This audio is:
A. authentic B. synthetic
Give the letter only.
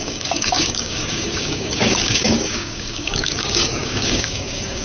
B